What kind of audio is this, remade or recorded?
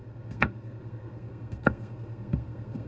remade